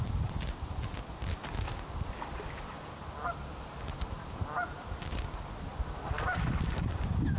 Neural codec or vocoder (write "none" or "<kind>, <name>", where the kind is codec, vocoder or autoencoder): none